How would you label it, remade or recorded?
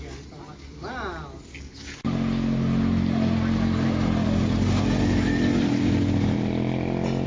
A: recorded